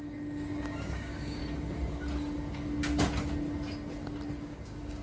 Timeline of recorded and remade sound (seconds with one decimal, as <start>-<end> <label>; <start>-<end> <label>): 0.0-1.4 remade; 1.4-4.4 recorded; 4.4-5.0 remade